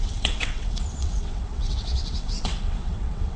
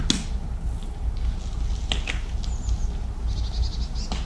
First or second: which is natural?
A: second